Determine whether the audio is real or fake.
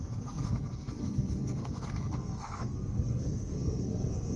fake